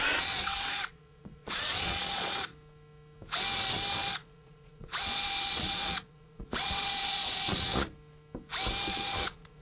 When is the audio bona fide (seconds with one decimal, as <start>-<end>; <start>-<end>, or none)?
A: 2.5-3.9; 7.7-8.9

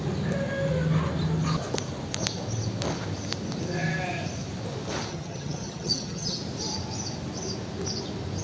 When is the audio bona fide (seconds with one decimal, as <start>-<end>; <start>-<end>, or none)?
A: 0.0-5.1; 6.4-8.4

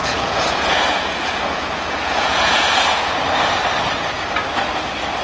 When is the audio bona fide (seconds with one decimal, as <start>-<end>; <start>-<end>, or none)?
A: 3.1-5.2

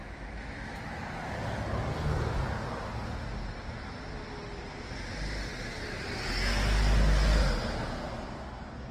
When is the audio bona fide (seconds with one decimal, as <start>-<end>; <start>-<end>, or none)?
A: 1.1-8.9

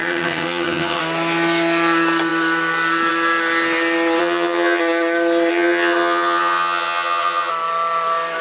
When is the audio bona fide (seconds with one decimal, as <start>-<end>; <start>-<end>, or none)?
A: 1.0-4.2; 4.8-5.5; 7.5-8.4

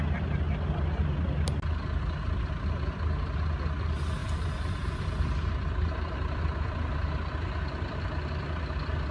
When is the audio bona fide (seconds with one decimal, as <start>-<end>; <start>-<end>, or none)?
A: 0.0-4.2; 8.4-9.1

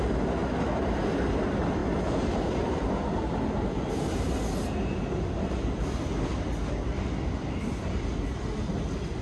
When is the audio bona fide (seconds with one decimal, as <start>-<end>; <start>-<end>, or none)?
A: 0.0-9.2